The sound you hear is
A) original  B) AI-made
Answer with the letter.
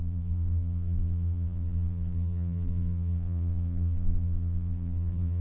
B